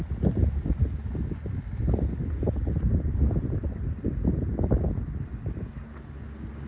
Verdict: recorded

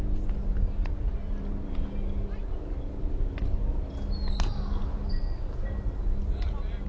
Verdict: recorded